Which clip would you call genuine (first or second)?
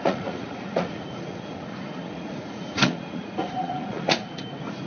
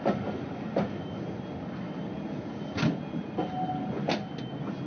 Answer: second